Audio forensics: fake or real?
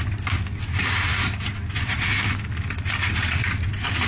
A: real